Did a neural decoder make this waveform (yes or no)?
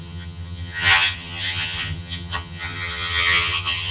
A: yes